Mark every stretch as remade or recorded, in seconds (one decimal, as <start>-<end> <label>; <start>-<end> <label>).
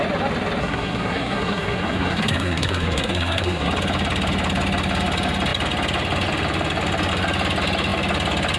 0.0-0.6 recorded; 0.6-3.7 remade; 3.7-8.6 recorded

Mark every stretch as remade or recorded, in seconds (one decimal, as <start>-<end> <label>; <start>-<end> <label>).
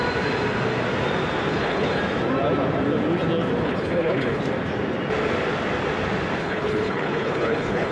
0.0-1.5 recorded; 1.5-2.0 remade; 2.0-3.6 recorded; 3.6-4.4 remade; 4.4-6.4 recorded; 6.4-7.9 remade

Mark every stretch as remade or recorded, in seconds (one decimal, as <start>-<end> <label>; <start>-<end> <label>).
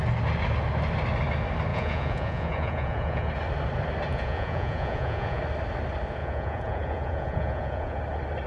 0.0-1.7 recorded; 1.7-3.3 remade; 3.3-4.1 recorded; 4.1-5.4 remade; 5.4-6.2 recorded; 6.2-8.0 remade; 8.0-8.5 recorded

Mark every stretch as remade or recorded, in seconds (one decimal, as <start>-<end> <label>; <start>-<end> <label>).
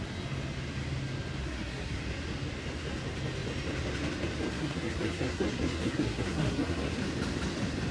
0.0-1.4 recorded; 1.4-2.0 remade; 2.0-4.5 recorded; 4.5-7.0 remade; 7.0-7.9 recorded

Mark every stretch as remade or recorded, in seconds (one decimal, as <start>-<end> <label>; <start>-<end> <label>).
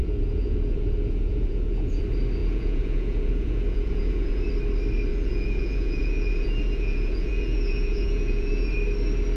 0.0-2.0 remade; 2.0-2.4 recorded; 2.4-4.5 remade; 4.5-5.1 recorded; 5.1-8.7 remade; 8.7-9.4 recorded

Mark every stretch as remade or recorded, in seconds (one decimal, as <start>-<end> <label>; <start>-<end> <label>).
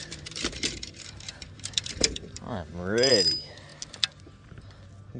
0.0-3.1 remade; 3.1-5.2 recorded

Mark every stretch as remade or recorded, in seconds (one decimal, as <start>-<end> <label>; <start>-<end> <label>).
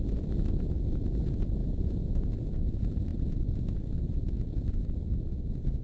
0.0-1.6 recorded; 1.6-2.3 remade; 2.3-5.8 recorded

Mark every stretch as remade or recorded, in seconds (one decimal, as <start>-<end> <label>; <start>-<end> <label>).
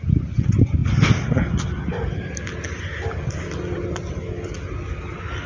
0.0-5.5 recorded